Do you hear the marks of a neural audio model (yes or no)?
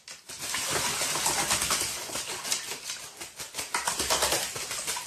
no